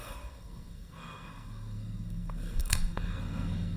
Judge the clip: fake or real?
fake